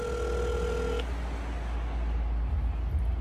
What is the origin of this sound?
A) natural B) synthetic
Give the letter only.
A